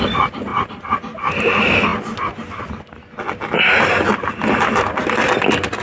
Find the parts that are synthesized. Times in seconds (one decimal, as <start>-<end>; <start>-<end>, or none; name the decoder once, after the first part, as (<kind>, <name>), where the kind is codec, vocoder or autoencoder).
none